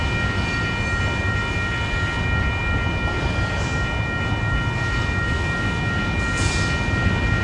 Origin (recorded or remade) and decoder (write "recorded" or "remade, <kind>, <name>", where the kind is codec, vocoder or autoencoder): recorded